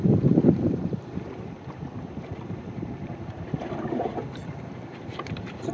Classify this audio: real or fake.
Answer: fake